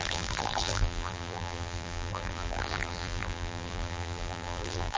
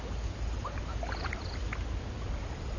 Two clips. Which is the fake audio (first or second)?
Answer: first